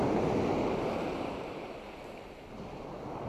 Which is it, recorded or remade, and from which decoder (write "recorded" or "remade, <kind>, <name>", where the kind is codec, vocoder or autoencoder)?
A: recorded